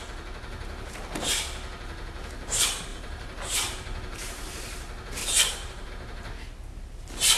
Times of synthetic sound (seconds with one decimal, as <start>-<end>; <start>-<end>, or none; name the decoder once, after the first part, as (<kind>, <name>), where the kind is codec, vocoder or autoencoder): 2.9-3.4 (vocoder, BigVGAN v2); 5.2-5.9